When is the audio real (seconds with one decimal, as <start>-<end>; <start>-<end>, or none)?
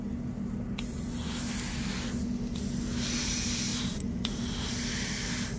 0.0-3.7; 4.7-5.6